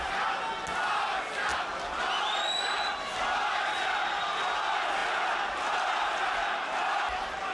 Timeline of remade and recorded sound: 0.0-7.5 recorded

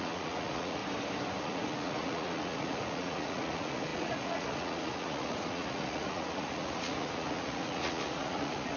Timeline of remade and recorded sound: 0.0-0.8 remade; 0.8-1.4 recorded; 1.4-8.8 remade